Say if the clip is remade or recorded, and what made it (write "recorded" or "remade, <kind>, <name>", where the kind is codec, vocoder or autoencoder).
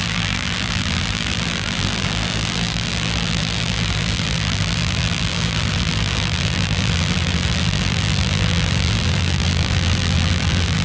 remade, vocoder, BigVGAN v2